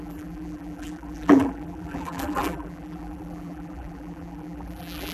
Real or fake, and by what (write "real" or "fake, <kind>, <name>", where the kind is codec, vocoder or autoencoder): fake, vocoder, BigVGAN v2